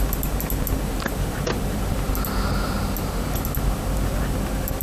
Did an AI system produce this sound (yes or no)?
no